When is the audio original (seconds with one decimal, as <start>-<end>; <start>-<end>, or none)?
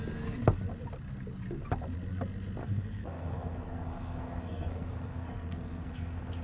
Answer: 0.0-2.6